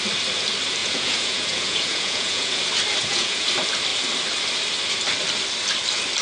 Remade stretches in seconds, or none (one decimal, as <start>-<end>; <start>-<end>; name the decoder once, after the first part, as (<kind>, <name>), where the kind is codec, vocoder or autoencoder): 0.8-2.6 (vocoder, Vocos); 3.0-3.5